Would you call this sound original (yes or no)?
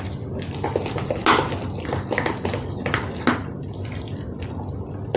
yes